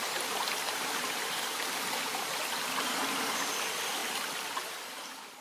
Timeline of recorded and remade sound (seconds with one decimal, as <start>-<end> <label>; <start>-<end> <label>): 0.0-5.4 recorded